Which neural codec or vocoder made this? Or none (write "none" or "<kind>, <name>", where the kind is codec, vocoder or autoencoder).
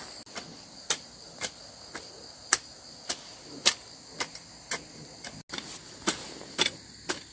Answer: none